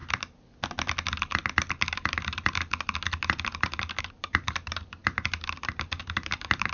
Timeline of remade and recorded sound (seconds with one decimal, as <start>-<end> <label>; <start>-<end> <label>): 0.0-4.0 recorded; 4.0-6.7 remade